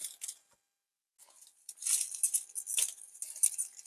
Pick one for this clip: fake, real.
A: real